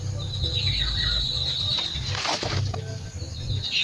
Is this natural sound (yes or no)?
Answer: yes